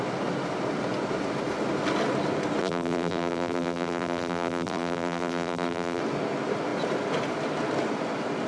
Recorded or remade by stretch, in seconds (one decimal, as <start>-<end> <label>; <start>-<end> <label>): 0.0-2.6 recorded; 2.6-6.0 remade; 6.0-8.5 recorded